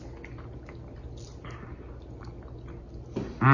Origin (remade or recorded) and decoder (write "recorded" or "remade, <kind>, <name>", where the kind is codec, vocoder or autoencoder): recorded